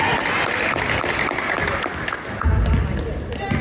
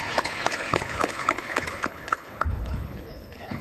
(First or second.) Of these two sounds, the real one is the first